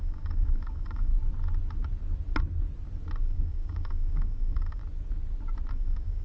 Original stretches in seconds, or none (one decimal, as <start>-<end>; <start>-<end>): 1.1-3.2; 4.8-5.7